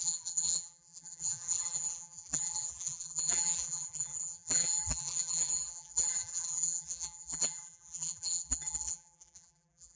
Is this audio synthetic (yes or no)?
yes